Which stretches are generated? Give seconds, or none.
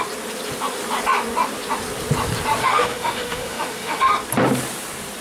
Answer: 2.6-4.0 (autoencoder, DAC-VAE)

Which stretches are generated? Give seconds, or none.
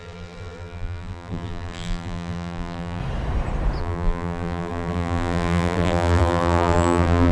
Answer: 0.0-3.0 (vocoder, BigVGAN v2); 3.8-7.3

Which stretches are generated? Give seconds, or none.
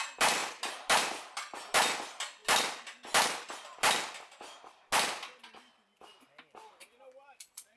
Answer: none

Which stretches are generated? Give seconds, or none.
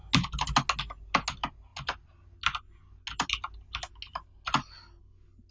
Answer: none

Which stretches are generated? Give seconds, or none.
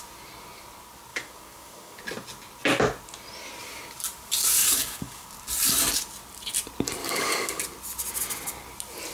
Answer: 1.1-2.0 (codec, DAC); 4.6-5.3; 7.0-7.6